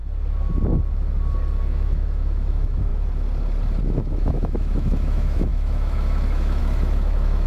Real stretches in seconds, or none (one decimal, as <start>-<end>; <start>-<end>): 0.0-1.6; 2.9-3.8

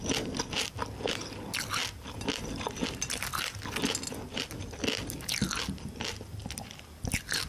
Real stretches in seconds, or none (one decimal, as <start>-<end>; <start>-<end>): 0.0-7.5